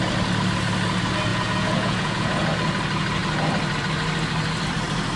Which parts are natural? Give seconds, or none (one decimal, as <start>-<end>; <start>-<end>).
0.0-1.3; 2.5-5.2